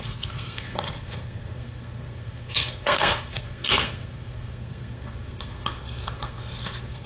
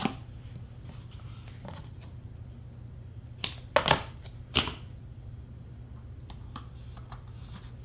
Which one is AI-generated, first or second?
first